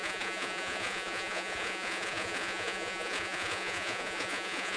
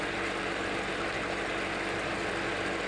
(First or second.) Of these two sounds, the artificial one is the first